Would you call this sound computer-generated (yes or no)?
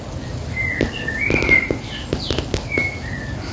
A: no